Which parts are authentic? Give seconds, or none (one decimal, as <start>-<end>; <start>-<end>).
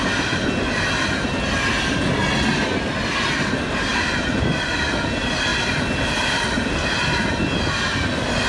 0.0-8.5